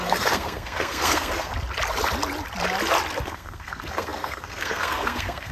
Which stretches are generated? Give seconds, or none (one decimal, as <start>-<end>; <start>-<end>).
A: 0.0-1.5; 3.2-5.5